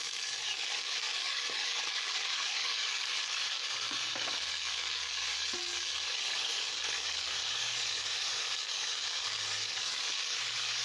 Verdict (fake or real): fake